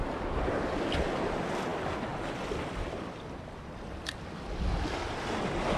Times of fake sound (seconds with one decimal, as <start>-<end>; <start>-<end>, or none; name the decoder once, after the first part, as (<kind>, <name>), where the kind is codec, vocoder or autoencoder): none